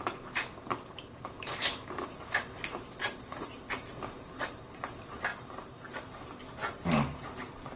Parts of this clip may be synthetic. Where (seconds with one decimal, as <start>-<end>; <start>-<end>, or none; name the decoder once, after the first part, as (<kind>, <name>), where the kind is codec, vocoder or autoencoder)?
0.0-7.8 (vocoder, BigVGAN v2)